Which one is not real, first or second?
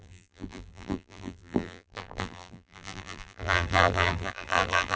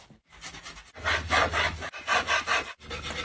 first